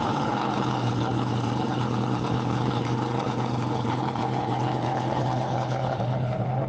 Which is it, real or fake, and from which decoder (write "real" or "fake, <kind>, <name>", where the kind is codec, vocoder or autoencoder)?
fake, codec, HILCodec